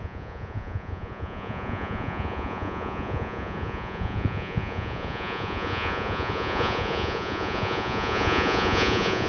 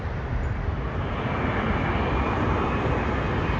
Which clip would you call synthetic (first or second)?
first